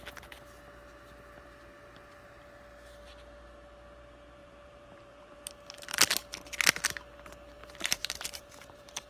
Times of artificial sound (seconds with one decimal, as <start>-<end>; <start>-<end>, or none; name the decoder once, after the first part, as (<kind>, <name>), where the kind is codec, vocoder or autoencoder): 4.4-5.5 (vocoder, BigVGAN v2); 7.6-9.1